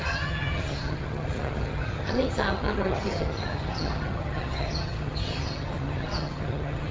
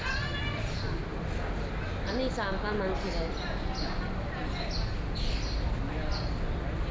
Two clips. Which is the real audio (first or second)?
second